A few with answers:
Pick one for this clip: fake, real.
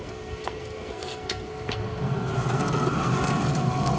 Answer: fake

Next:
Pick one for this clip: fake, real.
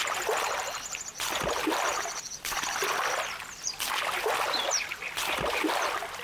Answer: real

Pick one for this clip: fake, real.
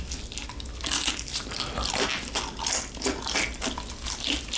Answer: real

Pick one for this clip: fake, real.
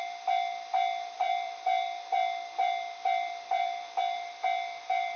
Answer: fake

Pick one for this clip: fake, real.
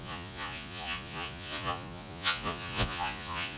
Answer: fake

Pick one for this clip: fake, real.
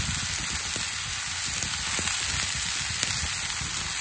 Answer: real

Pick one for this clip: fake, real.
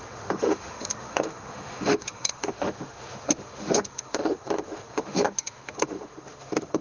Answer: fake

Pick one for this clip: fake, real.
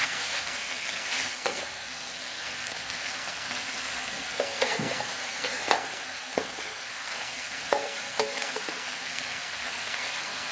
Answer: fake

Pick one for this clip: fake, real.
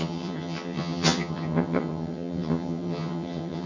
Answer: fake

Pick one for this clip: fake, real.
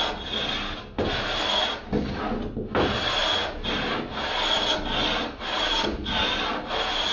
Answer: real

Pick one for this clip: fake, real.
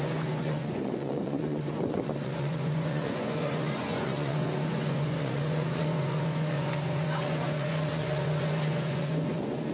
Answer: fake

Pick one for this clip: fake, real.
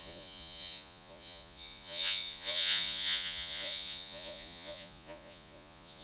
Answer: fake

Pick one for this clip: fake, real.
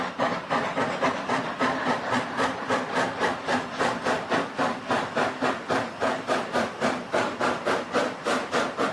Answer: fake